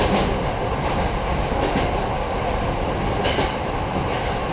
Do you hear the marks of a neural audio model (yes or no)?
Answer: no